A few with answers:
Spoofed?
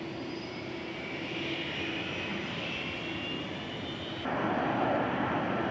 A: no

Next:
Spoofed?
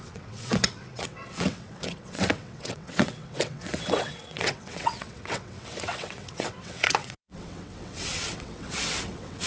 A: yes